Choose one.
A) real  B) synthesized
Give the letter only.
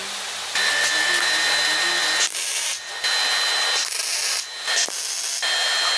A